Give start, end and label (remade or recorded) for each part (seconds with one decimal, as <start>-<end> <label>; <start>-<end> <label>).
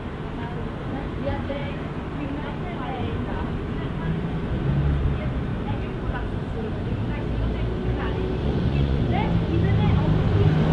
0.0-8.4 recorded; 8.4-9.0 remade; 9.0-10.7 recorded